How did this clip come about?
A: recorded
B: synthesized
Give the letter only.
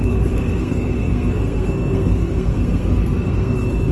B